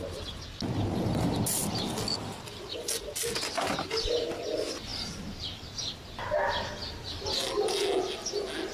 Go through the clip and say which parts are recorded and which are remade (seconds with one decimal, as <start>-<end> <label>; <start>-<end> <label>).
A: 0.0-4.9 recorded; 4.9-5.7 remade; 5.7-8.7 recorded